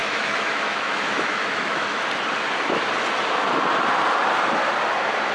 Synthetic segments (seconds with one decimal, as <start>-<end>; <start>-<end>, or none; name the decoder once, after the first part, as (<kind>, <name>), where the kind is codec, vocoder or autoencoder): 0.0-2.0 (autoencoder, DAC-VAE)